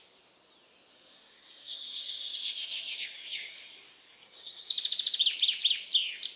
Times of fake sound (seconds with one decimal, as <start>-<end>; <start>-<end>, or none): 0.9-4.7